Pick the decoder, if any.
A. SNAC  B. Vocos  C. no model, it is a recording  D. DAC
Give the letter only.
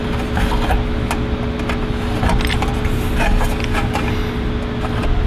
C